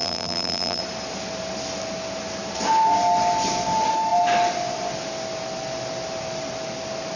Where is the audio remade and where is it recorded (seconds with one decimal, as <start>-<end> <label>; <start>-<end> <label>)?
0.0-0.8 remade; 0.8-7.2 recorded